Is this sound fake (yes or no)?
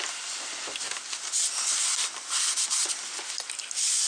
no